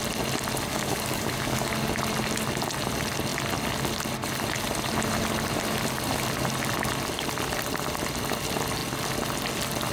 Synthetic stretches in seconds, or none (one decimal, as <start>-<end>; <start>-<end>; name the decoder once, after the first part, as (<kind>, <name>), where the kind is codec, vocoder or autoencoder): 0.7-1.7 (codec, DAC)

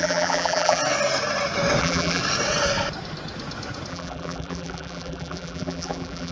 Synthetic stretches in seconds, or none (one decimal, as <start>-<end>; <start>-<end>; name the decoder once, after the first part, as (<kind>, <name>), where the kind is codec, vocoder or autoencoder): 0.0-0.8 (vocoder, BigVGAN v2); 1.8-2.2; 3.9-6.3

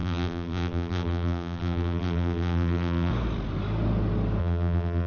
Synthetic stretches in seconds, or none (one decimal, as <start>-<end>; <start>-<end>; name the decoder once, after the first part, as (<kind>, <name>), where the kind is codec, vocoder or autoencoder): 0.0-3.1 (vocoder, BigVGAN v2); 4.4-5.1

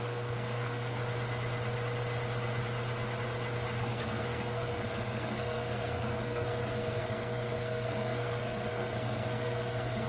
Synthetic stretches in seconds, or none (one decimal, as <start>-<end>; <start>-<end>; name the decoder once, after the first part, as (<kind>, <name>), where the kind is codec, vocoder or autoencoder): 0.0-1.0 (codec, SNAC); 3.8-10.1

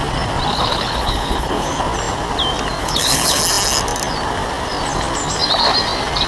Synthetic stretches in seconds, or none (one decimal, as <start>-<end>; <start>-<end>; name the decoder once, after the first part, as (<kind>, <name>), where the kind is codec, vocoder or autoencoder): 0.5-1.8 (codec, HILCodec); 2.8-3.4

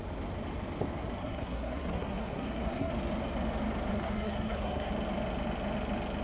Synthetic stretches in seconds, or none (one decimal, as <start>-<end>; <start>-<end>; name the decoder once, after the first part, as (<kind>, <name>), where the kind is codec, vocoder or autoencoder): 1.2-2.9 (codec, SNAC); 3.9-4.9

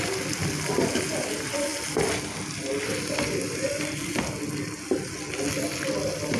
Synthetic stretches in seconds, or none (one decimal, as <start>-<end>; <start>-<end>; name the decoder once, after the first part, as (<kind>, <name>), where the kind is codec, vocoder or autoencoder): none